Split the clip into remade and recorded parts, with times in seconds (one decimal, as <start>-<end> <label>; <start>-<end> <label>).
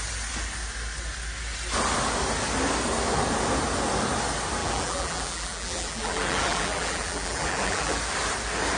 0.0-4.6 recorded; 4.6-8.0 remade; 8.0-8.8 recorded